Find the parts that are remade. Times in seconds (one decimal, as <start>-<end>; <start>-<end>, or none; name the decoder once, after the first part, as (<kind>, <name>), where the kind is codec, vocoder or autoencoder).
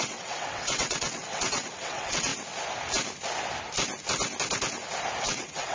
0.0-2.3 (vocoder, WaveNeXt); 5.2-5.7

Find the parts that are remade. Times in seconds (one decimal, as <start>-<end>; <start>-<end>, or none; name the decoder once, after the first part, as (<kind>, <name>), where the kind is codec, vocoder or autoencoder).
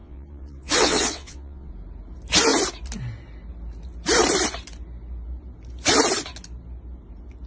0.0-1.7 (vocoder, WaveNeXt)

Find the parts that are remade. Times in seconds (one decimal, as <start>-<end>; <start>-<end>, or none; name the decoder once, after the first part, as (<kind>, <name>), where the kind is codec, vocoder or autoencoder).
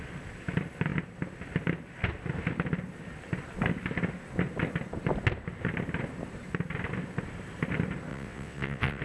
8.1-9.0 (vocoder, WaveNeXt)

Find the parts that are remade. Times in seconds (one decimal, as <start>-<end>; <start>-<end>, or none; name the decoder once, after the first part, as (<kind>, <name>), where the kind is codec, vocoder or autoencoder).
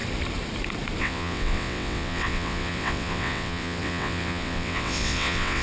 1.0-5.6 (vocoder, WaveNeXt)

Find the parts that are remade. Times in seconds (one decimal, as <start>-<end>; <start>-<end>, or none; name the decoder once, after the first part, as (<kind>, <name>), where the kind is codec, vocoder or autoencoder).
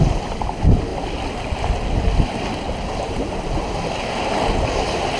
none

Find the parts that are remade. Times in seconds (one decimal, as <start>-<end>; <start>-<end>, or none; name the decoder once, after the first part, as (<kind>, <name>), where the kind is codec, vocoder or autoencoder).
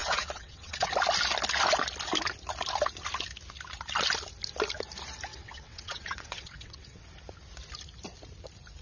0.0-0.9 (vocoder, WaveNeXt); 5.3-7.0